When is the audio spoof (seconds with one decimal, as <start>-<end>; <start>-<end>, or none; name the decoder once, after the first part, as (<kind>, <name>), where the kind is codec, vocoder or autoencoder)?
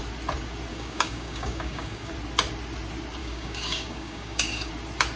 0.7-2.1 (codec, DAC); 3.2-4.7